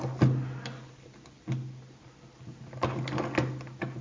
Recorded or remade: recorded